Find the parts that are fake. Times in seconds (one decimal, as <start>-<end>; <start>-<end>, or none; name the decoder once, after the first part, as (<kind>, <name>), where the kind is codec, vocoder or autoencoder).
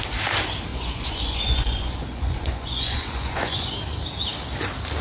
0.7-3.7 (vocoder, Vocos)